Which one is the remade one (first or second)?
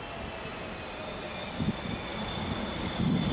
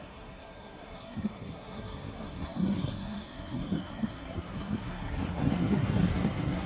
second